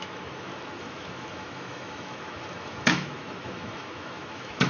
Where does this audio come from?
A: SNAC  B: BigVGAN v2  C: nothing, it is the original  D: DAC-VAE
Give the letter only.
D